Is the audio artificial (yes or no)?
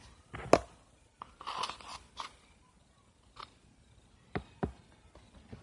no